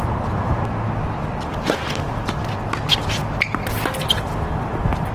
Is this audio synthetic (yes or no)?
no